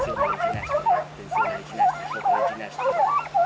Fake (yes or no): no